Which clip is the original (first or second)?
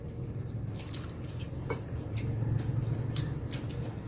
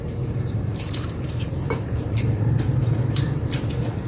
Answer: first